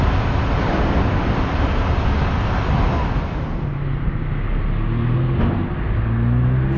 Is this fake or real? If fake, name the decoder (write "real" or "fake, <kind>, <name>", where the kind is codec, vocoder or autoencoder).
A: real